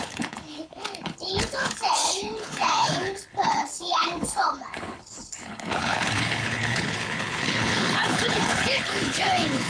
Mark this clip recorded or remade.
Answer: remade